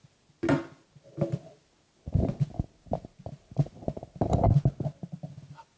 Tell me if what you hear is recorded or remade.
recorded